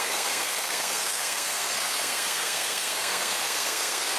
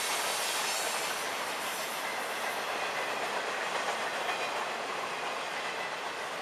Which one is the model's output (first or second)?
first